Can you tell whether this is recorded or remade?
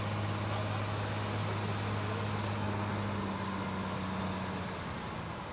recorded